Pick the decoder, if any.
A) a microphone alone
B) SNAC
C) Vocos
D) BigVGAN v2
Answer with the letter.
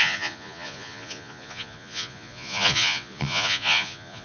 C